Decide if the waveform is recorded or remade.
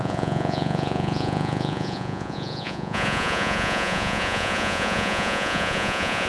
remade